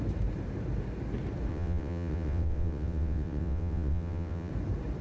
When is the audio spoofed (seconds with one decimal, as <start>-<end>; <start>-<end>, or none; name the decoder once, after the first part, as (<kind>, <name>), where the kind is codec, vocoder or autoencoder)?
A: 1.5-4.5 (vocoder, WaveNeXt)